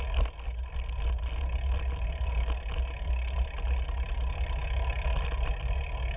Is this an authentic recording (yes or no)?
yes